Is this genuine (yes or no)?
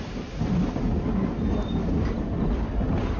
yes